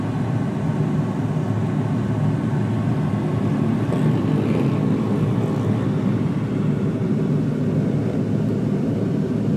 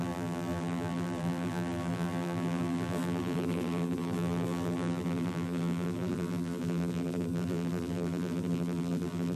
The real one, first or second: first